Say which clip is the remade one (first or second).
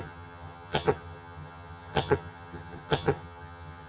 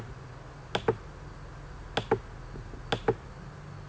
first